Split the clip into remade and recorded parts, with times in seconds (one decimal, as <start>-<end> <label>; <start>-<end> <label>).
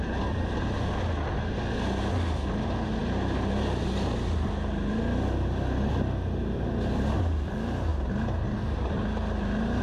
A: 0.0-9.8 recorded